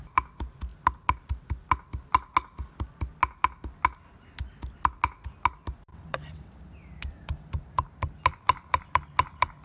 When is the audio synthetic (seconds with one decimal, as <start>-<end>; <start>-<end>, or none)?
5.9-6.5